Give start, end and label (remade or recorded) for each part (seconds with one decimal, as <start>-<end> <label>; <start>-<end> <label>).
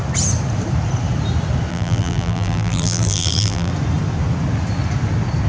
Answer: 0.0-1.7 recorded; 1.7-3.7 remade; 3.7-5.5 recorded